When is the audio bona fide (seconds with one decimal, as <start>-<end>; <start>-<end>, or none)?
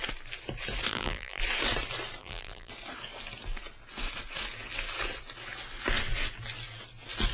0.0-0.9; 1.4-2.2; 2.7-7.3